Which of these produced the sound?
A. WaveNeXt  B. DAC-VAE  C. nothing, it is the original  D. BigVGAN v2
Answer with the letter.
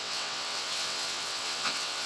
A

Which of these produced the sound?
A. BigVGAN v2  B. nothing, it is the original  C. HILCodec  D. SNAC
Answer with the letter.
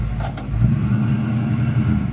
B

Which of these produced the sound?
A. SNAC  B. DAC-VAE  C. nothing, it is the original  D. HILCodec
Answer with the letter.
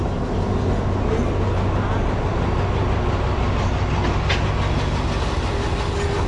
C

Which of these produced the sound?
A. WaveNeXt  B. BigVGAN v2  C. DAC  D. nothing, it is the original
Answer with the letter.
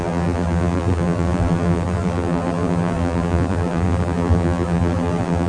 B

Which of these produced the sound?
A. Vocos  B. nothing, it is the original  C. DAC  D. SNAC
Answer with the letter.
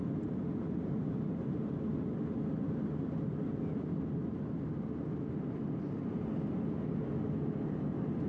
B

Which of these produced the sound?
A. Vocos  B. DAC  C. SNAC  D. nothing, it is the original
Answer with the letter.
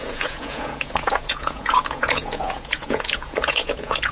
A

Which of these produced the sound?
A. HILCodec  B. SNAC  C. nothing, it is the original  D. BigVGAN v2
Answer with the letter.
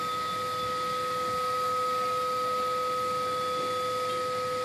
C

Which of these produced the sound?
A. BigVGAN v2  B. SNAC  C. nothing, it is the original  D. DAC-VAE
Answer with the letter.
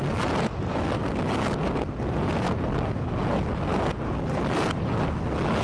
C